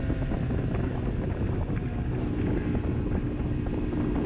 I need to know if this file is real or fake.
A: real